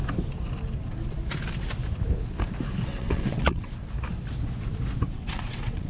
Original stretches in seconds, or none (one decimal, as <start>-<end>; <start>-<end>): 0.0-2.9; 3.7-5.1